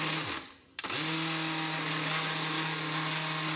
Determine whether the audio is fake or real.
real